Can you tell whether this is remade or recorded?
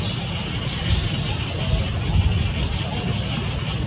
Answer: recorded